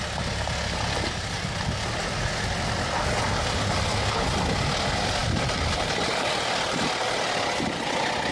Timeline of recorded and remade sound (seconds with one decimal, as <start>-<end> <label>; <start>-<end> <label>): 0.0-5.2 recorded; 5.2-5.9 remade; 5.9-8.3 recorded